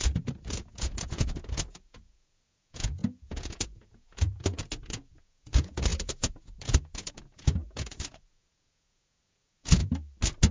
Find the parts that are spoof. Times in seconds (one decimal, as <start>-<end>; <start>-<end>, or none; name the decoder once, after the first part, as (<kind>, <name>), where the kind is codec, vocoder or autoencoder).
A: 0.0-9.8 (vocoder, Vocos)